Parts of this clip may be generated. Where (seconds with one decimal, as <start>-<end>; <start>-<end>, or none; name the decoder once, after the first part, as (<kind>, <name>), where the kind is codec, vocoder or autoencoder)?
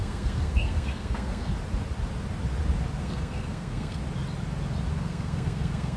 0.0-1.5 (codec, SNAC); 3.0-4.0; 4.9-6.0